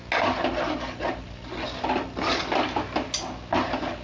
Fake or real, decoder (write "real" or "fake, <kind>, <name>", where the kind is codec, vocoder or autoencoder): real